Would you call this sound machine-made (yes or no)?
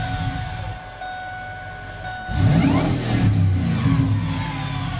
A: no